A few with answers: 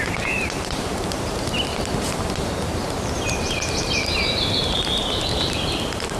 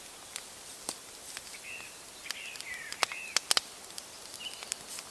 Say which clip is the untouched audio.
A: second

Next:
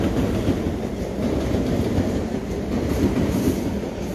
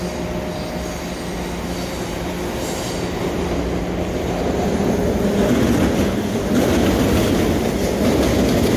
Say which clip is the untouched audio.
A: second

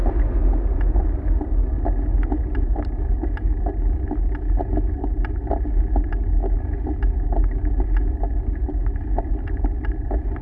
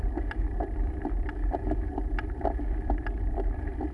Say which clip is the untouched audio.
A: first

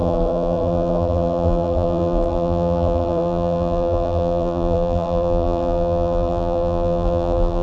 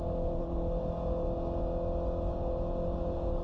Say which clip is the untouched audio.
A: second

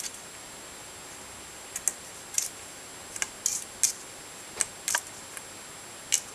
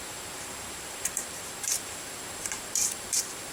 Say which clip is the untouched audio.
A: first